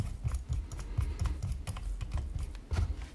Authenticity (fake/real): real